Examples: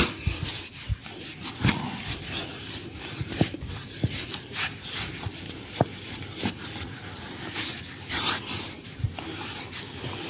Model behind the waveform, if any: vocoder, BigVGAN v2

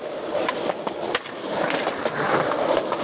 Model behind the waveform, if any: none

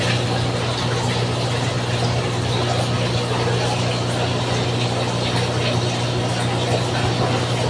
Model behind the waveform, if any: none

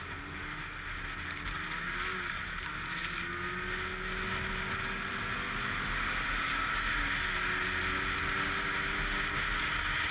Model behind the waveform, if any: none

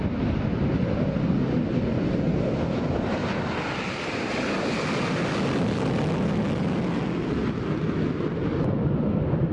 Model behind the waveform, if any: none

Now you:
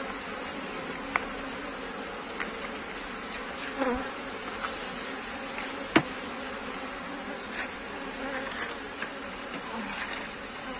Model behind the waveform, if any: none